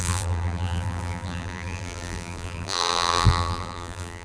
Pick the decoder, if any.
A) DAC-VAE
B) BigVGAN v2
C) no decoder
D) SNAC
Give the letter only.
B